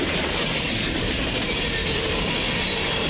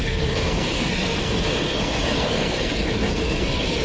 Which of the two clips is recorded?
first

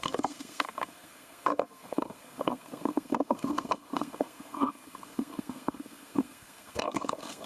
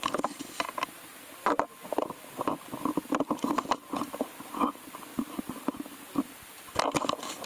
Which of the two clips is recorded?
second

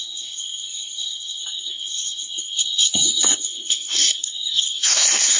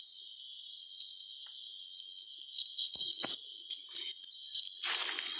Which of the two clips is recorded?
second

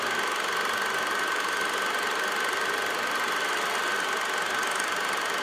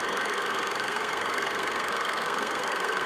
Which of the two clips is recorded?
first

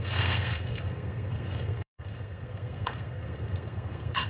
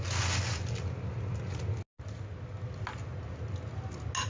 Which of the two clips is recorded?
second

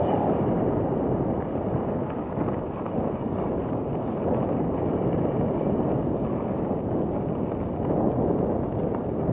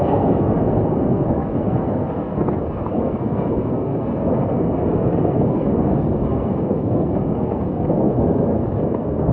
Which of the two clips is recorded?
first